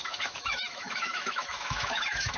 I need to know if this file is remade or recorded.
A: remade